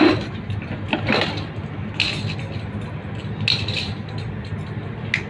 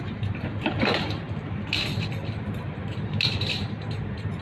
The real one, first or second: first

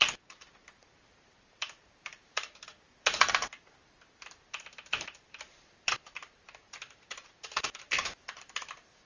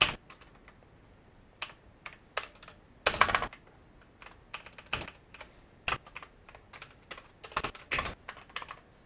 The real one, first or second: second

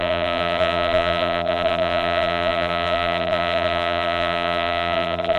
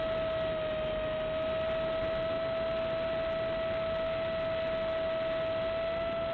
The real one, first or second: second